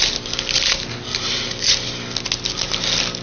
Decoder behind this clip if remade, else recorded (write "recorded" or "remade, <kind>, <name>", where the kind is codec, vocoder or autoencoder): recorded